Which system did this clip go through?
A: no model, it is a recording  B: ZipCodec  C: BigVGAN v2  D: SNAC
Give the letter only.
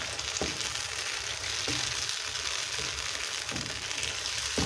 A